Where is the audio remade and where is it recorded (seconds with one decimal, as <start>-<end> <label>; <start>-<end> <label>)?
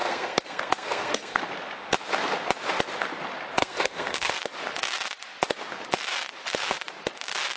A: 0.0-1.4 remade; 1.4-3.6 recorded; 3.6-4.3 remade; 4.3-7.6 recorded